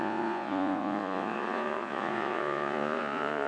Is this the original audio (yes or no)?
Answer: no